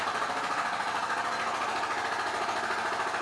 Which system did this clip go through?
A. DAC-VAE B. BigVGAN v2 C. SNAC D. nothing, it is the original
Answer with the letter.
D